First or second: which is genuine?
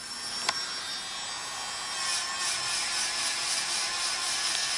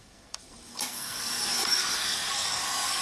first